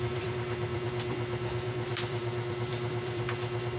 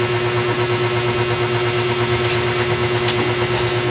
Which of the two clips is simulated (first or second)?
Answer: first